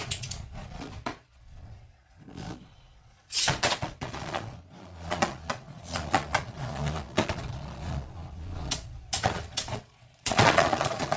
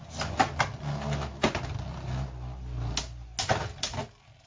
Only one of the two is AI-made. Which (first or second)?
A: first